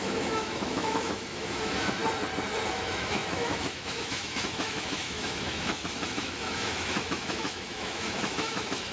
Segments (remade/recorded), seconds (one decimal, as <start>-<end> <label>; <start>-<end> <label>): 0.0-2.0 remade; 2.0-2.7 recorded; 2.7-8.9 remade